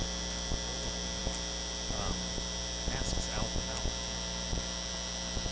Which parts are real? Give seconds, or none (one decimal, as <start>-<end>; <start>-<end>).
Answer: 0.0-5.5

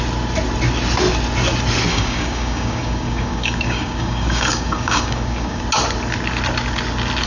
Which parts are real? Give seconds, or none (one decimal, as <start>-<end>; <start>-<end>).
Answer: 0.0-1.9; 5.6-7.3